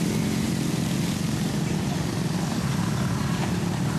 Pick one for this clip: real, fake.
fake